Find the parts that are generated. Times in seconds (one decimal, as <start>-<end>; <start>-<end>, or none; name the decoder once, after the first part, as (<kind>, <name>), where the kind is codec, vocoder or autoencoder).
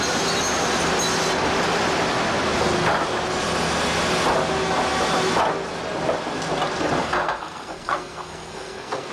7.0-9.1 (codec, SNAC)